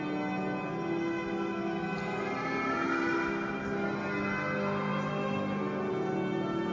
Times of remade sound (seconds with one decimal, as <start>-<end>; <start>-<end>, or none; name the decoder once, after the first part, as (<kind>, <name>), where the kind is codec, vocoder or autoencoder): none